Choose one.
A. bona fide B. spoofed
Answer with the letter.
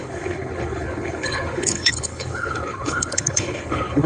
B